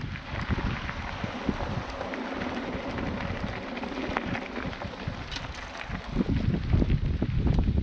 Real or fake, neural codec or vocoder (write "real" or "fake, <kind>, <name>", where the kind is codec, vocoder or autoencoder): real